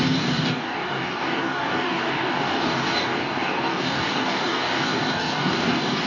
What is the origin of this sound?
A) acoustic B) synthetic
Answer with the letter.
B